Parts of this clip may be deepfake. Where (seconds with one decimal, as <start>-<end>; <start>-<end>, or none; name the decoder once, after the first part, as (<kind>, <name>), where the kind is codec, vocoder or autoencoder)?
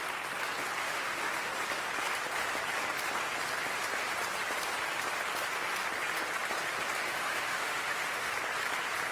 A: 0.8-1.5 (autoencoder, DAC-VAE); 7.0-8.3